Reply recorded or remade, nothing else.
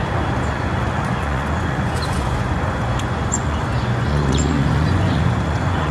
remade